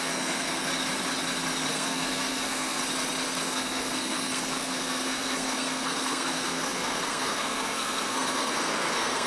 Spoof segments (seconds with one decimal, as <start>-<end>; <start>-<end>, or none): 0.0-0.7; 1.7-2.8; 3.4-9.3